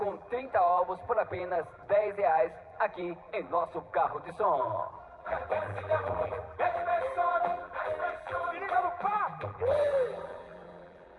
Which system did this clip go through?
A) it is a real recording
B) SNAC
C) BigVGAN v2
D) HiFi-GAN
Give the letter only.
C